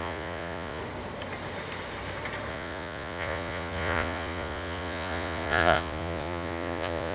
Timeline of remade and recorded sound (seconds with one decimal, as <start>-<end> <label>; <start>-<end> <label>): 0.0-0.8 remade; 0.8-2.5 recorded; 2.5-7.1 remade